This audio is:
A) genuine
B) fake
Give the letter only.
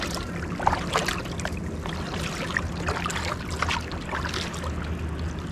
A